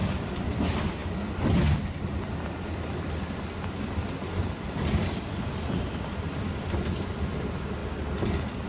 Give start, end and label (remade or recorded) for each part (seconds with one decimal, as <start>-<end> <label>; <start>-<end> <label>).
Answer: 0.0-0.6 remade; 0.6-5.0 recorded; 5.0-7.3 remade; 7.3-7.8 recorded; 7.8-8.7 remade